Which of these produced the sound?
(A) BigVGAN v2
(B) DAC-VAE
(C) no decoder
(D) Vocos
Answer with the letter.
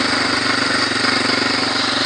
C